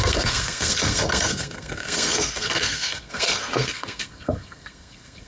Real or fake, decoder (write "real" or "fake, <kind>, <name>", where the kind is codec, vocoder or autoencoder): fake, codec, SNAC